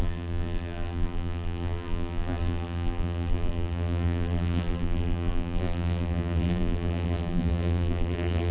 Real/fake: fake